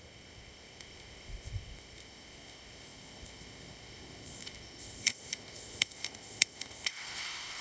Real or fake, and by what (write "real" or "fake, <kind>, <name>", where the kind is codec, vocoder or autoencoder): fake, codec, ZipCodec